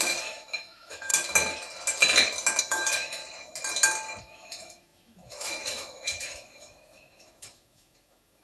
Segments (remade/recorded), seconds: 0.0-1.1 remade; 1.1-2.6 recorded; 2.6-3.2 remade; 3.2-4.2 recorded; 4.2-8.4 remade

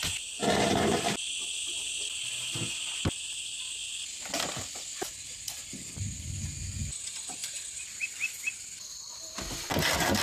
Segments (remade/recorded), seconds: 0.0-0.4 recorded; 0.4-1.0 remade; 1.0-3.8 recorded; 3.8-6.4 remade; 6.4-7.4 recorded; 7.4-9.1 remade; 9.1-10.2 recorded

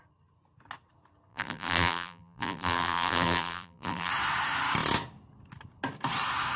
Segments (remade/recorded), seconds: 0.0-1.3 recorded; 1.3-4.1 remade; 4.1-6.6 recorded

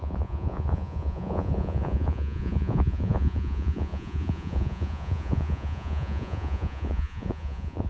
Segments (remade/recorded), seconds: 0.0-7.9 remade

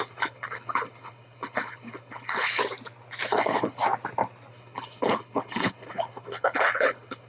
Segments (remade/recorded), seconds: 0.0-2.6 remade; 2.6-3.3 recorded; 3.3-3.8 remade; 3.8-4.5 recorded; 4.5-7.3 remade